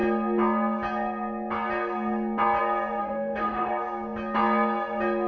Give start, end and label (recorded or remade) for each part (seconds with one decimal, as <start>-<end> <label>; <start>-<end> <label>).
0.0-3.0 recorded; 3.0-3.7 remade; 3.7-5.3 recorded